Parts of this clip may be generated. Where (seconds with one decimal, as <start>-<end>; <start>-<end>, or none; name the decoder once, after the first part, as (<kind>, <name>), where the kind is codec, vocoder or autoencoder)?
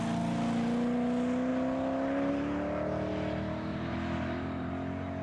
3.7-4.7 (vocoder, BigVGAN v2)